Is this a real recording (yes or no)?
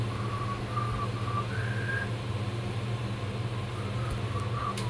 yes